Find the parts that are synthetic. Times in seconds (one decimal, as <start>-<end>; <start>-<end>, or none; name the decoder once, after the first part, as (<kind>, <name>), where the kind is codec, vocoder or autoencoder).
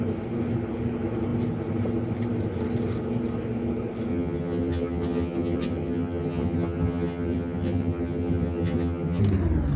4.1-9.2 (vocoder, HiFi-GAN)